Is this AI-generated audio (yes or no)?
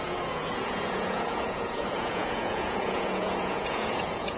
yes